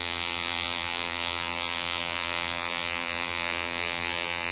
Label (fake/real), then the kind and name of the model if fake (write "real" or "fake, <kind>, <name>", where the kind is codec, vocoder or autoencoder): fake, vocoder, BigVGAN v2